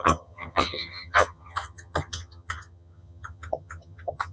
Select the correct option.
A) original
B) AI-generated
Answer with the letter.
B